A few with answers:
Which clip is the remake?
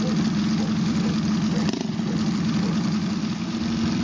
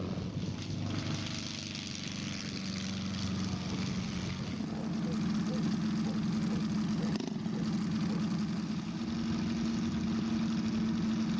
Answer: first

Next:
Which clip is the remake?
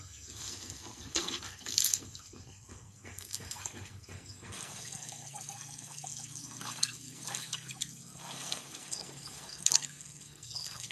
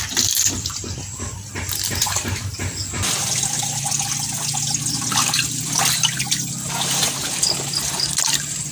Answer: first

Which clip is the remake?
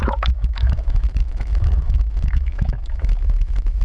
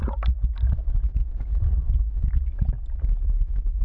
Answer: first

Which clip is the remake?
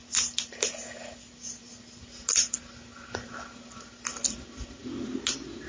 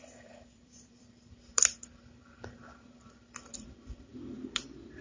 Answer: second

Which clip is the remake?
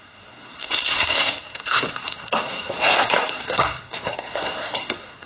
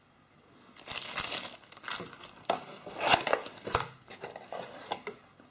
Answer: first